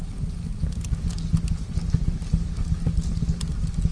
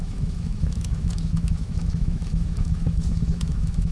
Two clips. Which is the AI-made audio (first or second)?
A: second